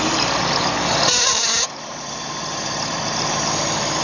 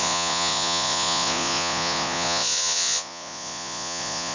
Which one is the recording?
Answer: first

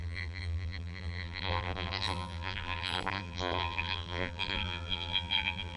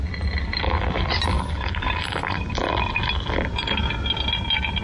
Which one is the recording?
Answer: second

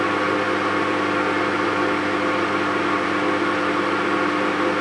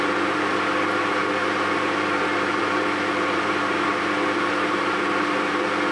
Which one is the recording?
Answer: first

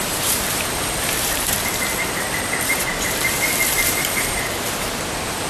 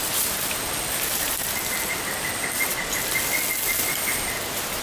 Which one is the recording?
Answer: second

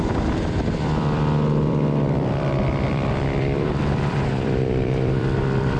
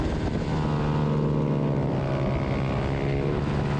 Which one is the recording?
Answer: second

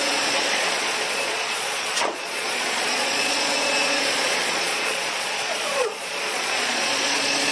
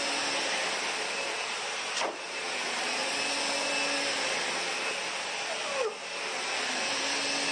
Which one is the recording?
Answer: second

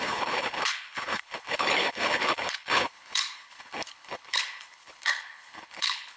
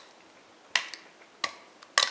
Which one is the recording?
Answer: second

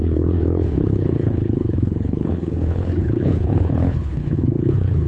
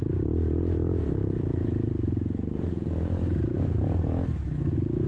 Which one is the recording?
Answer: second